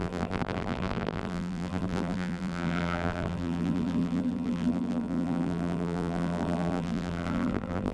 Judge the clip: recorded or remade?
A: remade